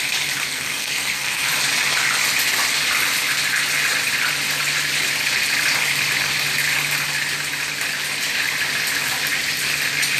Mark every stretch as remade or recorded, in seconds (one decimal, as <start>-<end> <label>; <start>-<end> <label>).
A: 0.0-0.5 recorded; 0.5-1.5 remade; 1.5-10.2 recorded